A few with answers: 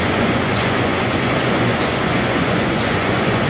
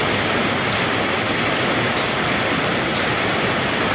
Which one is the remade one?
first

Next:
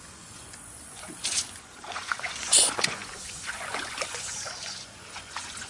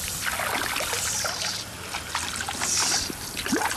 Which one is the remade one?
first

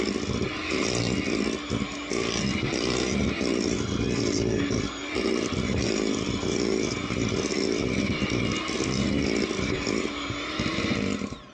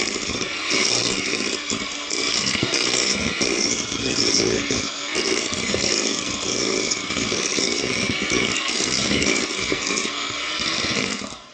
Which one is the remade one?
second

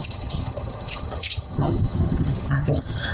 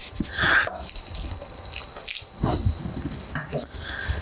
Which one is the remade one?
first